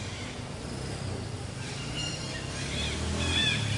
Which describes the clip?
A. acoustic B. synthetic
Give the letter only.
A